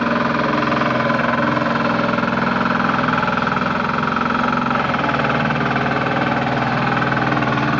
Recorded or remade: recorded